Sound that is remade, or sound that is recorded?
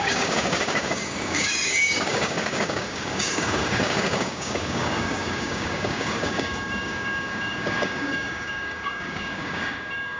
remade